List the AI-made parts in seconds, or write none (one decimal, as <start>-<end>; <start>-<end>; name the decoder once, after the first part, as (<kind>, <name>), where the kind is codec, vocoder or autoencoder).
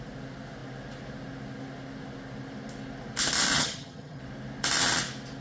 3.5-4.2 (vocoder, HiFi-GAN)